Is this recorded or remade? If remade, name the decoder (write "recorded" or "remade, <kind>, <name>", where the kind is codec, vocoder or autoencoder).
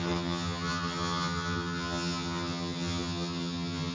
remade, vocoder, HiFi-GAN